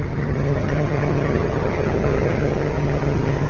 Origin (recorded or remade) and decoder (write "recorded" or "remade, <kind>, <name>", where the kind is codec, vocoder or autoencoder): remade, vocoder, HiFi-GAN